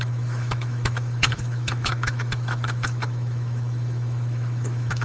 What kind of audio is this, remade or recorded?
remade